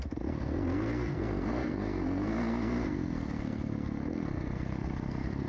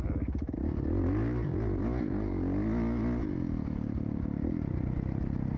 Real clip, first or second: second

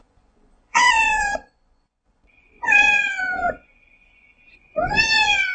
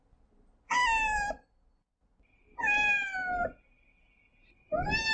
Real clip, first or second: second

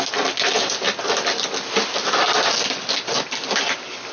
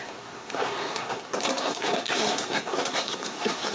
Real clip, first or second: first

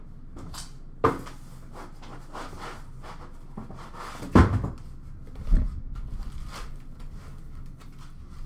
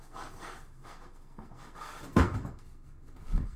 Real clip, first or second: first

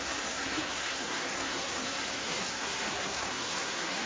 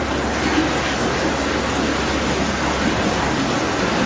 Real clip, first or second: second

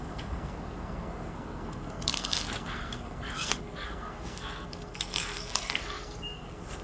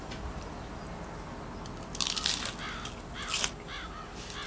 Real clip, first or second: second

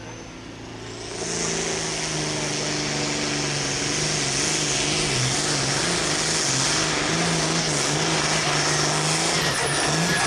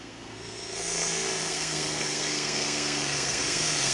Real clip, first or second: first